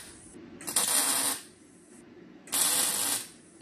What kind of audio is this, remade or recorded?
recorded